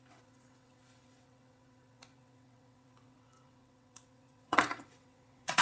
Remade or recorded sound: remade